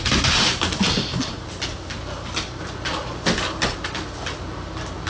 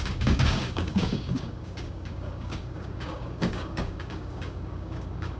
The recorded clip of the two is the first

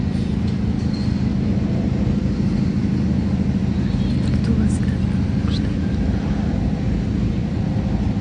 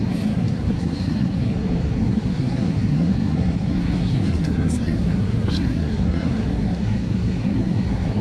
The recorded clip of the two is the first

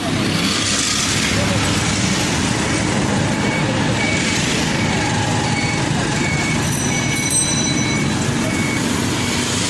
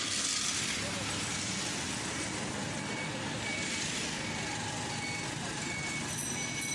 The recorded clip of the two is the second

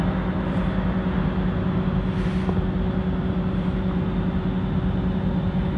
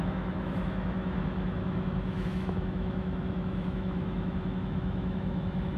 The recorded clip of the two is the first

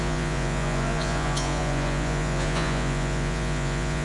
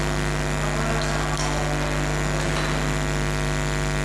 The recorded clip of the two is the second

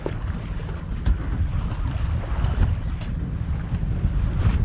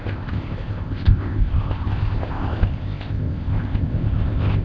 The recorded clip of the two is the first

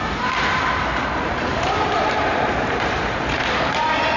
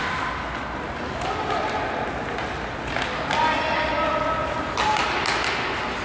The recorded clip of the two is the second